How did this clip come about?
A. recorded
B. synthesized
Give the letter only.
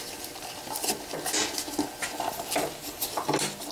A